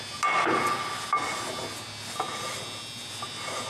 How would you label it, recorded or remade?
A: recorded